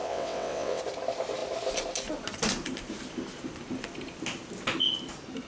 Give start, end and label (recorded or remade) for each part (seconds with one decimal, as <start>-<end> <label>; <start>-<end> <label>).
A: 0.0-0.8 remade; 0.8-5.5 recorded